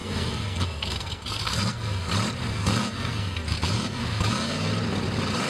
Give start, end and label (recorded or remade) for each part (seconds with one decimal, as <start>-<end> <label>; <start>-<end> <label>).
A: 0.0-2.1 remade; 2.1-2.5 recorded; 2.5-4.7 remade; 4.7-5.5 recorded